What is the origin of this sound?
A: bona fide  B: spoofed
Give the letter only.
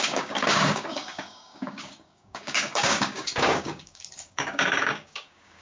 B